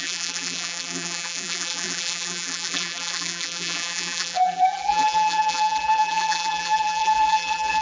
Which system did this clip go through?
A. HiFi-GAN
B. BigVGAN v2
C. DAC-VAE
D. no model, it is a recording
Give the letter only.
B